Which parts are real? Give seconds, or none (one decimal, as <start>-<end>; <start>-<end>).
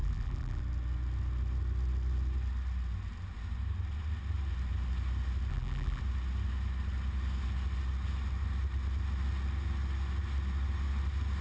0.6-5.5; 6.0-11.4